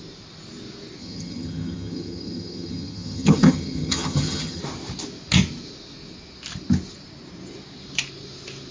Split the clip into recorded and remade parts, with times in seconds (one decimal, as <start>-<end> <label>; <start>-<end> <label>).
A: 0.0-1.0 recorded; 1.0-4.6 remade; 4.6-8.7 recorded